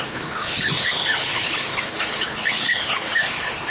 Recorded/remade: remade